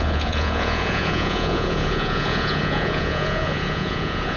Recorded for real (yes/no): no